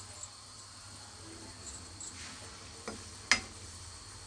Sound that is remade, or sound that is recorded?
recorded